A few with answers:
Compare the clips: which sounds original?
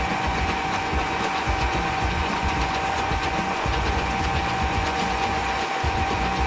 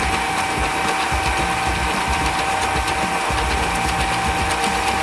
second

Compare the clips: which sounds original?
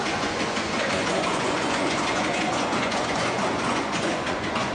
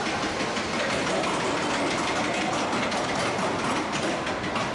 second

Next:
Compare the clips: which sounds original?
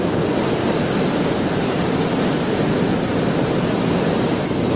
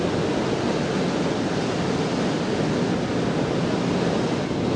second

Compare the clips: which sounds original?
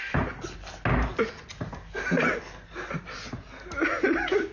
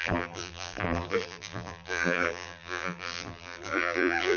first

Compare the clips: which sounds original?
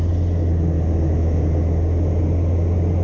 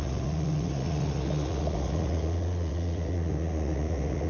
first